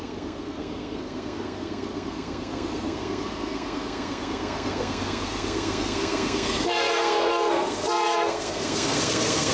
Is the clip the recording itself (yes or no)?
no